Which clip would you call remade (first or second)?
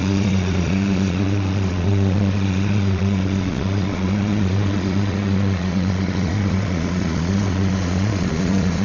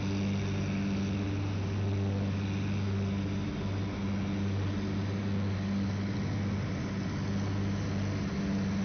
first